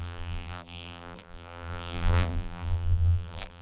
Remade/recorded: remade